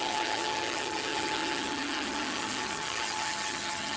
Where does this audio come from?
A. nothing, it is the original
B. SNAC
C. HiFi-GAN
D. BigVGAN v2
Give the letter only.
C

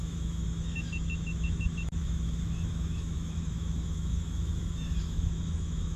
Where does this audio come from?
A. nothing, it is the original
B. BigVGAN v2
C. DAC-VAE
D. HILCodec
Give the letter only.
C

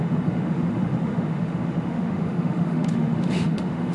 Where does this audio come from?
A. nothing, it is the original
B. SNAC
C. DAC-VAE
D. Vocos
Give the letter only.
C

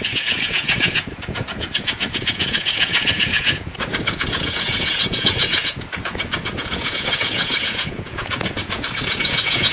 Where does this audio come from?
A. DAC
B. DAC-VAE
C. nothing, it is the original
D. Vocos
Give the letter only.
D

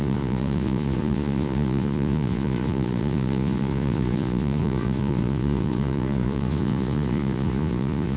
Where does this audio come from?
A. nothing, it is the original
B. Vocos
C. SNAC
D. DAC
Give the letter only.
B